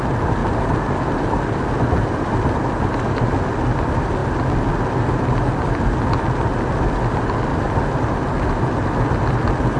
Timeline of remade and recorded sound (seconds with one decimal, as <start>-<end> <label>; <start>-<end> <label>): 0.0-0.4 recorded; 0.4-2.5 remade; 2.5-9.8 recorded